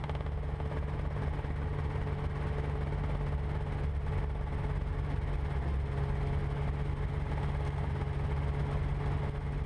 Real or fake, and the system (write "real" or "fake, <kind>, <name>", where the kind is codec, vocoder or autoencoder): real